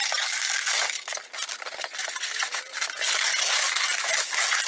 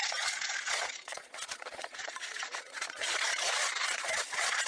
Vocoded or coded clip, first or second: second